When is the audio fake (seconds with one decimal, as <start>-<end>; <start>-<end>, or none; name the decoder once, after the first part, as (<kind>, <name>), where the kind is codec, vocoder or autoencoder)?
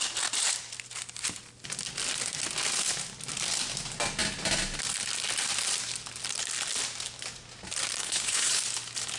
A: 8.0-8.6 (codec, HILCodec)